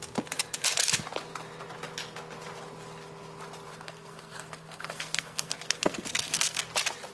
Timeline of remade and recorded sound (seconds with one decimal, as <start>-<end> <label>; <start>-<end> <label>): 0.0-3.7 recorded; 3.7-6.6 remade; 6.6-7.1 recorded